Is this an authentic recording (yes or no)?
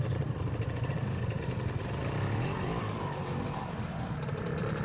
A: no